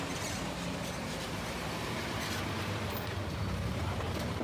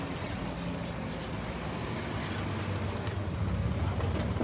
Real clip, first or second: second